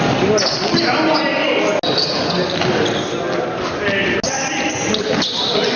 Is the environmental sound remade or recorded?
recorded